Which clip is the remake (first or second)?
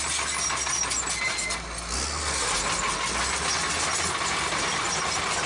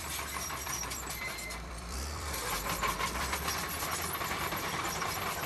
second